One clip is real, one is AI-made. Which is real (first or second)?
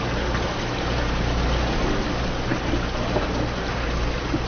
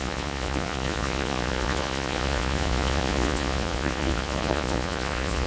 first